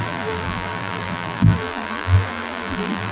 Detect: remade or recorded remade